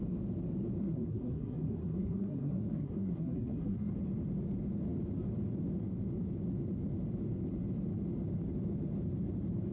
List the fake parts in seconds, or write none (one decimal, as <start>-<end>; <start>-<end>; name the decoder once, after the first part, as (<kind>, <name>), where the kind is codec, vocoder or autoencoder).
0.8-3.9 (codec, SNAC)